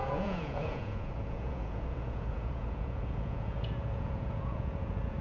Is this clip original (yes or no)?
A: no